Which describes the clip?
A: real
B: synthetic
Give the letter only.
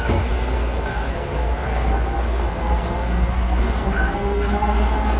B